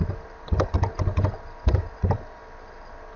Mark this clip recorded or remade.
recorded